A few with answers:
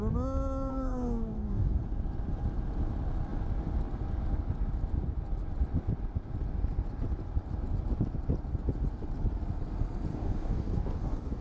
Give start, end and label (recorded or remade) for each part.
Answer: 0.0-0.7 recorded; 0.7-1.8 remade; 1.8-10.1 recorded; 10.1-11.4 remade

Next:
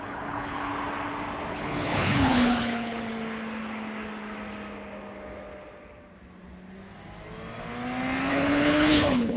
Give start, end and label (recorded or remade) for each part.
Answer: 0.0-0.7 remade; 0.7-1.5 recorded; 1.5-3.1 remade; 3.1-8.3 recorded; 8.3-9.4 remade

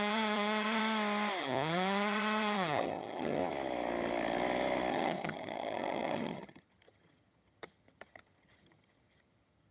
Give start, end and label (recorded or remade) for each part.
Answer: 0.0-0.8 remade; 0.8-1.4 recorded; 1.4-3.4 remade; 3.4-4.9 recorded; 4.9-9.7 remade

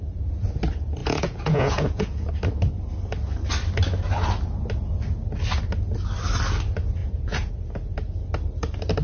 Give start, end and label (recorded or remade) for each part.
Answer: 0.0-1.0 recorded; 1.0-2.3 remade; 2.3-7.0 recorded; 7.0-7.5 remade; 7.5-9.0 recorded

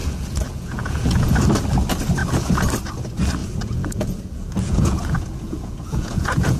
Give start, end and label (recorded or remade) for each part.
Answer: 0.0-1.3 remade; 1.3-3.4 recorded; 3.4-6.6 remade